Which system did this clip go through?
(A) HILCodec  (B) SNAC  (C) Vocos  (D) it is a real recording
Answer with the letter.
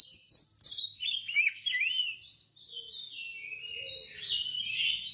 D